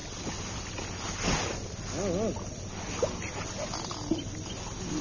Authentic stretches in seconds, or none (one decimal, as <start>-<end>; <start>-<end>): 0.0-5.0